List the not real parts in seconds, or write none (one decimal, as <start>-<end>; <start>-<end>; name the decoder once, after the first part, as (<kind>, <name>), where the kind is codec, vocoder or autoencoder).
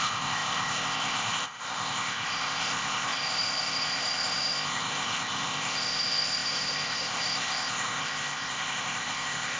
0.0-9.6 (codec, ZipCodec)